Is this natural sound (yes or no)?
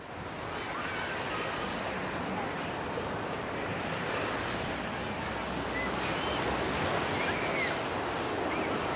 yes